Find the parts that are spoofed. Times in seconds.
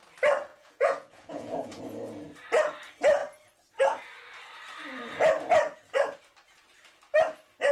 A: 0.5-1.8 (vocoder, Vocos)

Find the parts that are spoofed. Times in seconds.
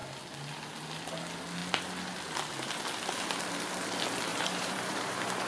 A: 4.3-5.5 (vocoder, BigVGAN v2)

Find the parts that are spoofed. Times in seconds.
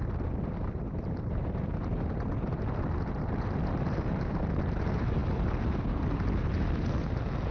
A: none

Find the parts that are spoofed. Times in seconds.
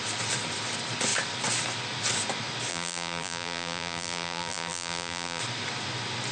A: 2.7-5.4 (vocoder, BigVGAN v2)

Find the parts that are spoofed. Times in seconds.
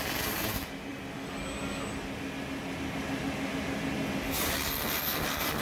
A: none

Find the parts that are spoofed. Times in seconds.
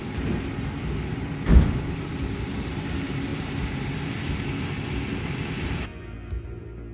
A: none